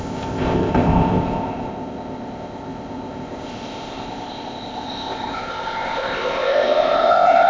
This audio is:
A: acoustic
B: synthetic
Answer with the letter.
B